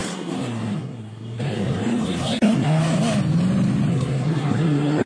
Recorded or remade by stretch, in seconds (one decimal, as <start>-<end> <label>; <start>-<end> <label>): 0.0-2.8 remade; 2.8-3.9 recorded; 3.9-5.1 remade